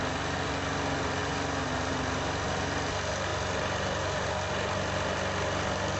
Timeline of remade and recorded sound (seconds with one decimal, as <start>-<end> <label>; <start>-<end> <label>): 0.0-6.0 recorded

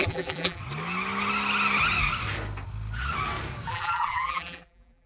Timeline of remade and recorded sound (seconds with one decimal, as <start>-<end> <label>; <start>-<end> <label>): 0.0-0.6 remade; 0.6-3.7 recorded; 3.7-5.1 remade

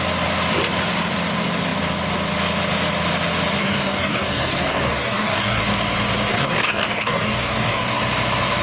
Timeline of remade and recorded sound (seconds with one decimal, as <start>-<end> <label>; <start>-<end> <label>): 0.0-3.6 recorded; 3.6-5.6 remade; 5.6-6.3 recorded; 6.3-8.0 remade; 8.0-8.6 recorded

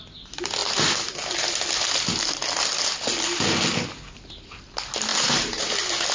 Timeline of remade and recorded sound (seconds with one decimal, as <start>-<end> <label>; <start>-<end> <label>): 0.0-6.1 recorded